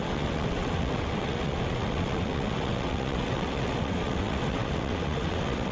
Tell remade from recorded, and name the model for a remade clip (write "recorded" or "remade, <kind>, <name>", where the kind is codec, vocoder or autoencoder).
remade, vocoder, WaveNeXt